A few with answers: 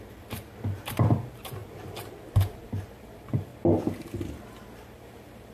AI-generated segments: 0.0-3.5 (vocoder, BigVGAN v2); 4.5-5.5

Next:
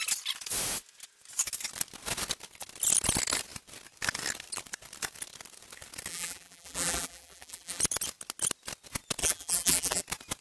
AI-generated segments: 6.1-7.8 (vocoder, BigVGAN v2); 9.2-10.0

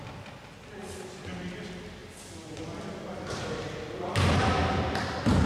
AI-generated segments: none

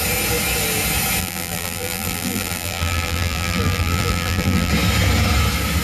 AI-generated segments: 1.2-4.7 (vocoder, BigVGAN v2)

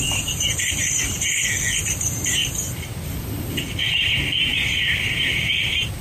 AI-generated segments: 2.4-4.1 (vocoder, BigVGAN v2); 4.5-5.1

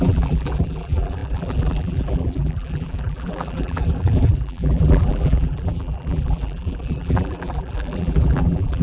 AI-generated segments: 0.0-8.8 (vocoder, BigVGAN v2)

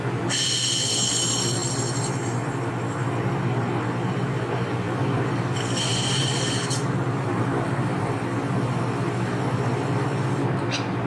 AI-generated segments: 5.9-7.4 (vocoder, BigVGAN v2)